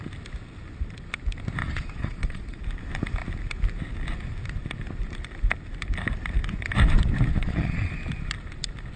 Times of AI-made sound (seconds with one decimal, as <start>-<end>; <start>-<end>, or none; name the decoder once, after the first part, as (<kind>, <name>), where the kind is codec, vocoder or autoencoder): 1.6-2.6 (vocoder, Vocos); 7.3-7.9